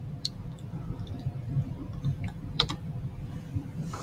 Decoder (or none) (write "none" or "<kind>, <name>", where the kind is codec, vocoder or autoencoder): vocoder, BigVGAN v2